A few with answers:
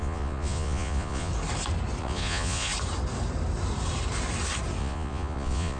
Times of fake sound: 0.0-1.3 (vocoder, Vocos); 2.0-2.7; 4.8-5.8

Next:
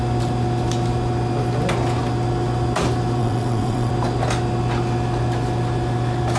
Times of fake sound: 3.2-3.9 (vocoder, WaveNeXt)

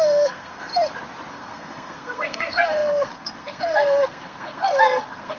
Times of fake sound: 0.0-0.7 (codec, SNAC); 1.3-5.4

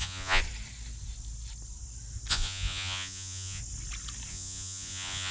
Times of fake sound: 0.0-0.4 (vocoder, Vocos); 2.3-3.6; 4.3-5.3

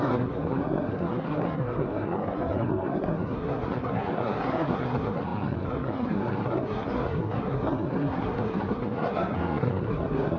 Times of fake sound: 0.0-10.4 (codec, SNAC)

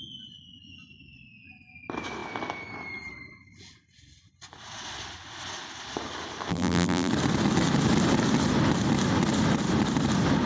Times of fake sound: 6.5-7.1 (vocoder, BigVGAN v2)

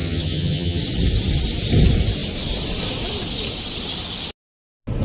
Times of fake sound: 0.0-0.8 (vocoder, HiFi-GAN)

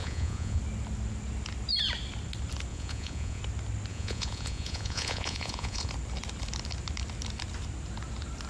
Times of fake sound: 0.0-0.6 (vocoder, Vocos); 2.7-3.4; 3.9-5.9